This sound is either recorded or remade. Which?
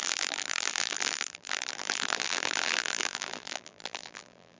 remade